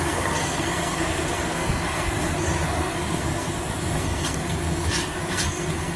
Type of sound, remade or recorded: remade